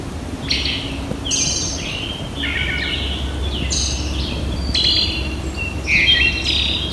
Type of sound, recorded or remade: recorded